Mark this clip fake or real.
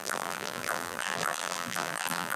fake